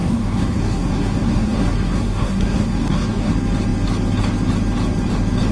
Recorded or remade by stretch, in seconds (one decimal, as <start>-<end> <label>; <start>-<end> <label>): 0.0-3.3 remade; 3.3-5.5 recorded